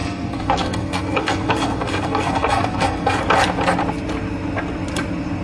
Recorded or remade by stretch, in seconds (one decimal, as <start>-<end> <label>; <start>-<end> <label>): 0.0-3.2 remade; 3.2-5.4 recorded